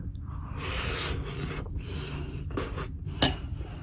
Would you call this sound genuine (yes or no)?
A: yes